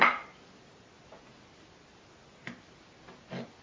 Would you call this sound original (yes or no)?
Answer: yes